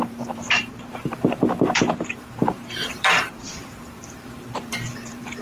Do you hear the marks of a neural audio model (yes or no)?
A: yes